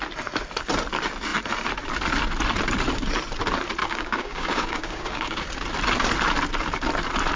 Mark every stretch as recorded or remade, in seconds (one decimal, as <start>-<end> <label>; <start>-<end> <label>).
0.0-3.8 recorded; 3.8-5.4 remade; 5.4-7.4 recorded